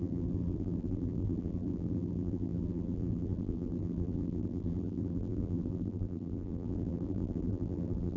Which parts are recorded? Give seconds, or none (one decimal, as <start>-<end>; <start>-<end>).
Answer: none